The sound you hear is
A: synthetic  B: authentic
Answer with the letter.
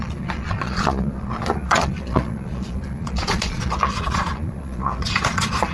A